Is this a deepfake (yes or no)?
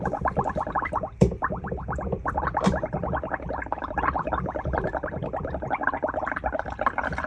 yes